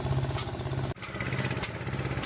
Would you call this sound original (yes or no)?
yes